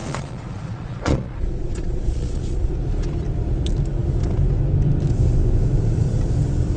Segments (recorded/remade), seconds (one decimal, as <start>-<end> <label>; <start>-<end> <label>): 0.0-2.7 remade; 2.7-6.8 recorded

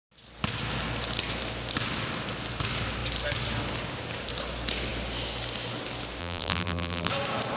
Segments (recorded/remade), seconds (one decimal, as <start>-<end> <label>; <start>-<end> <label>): 0.0-6.2 recorded; 6.2-7.1 remade; 7.1-7.6 recorded

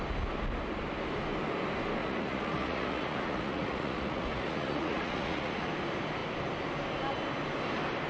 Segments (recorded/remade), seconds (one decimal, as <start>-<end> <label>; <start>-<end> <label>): 0.0-2.0 recorded; 2.0-5.7 remade; 5.7-8.1 recorded

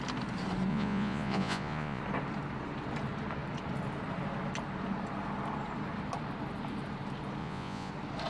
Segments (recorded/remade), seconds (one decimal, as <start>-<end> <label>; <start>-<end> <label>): 0.0-0.7 recorded; 0.7-2.0 remade; 2.0-7.4 recorded; 7.4-7.9 remade; 7.9-8.3 recorded

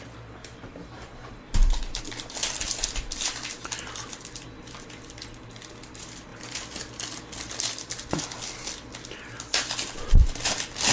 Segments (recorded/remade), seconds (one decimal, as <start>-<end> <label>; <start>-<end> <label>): 0.0-0.4 recorded; 0.4-2.0 remade; 2.0-10.9 recorded

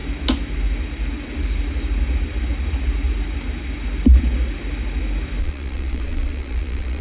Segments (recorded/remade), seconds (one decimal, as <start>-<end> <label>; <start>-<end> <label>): 0.0-5.4 recorded; 5.4-7.0 remade

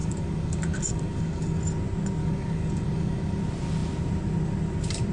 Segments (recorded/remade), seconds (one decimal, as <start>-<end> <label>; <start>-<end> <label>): 0.0-1.6 remade; 1.6-2.2 recorded; 2.2-3.4 remade; 3.4-5.1 recorded